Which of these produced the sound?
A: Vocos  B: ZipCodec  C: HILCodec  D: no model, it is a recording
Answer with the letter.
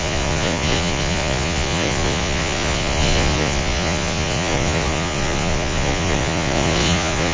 A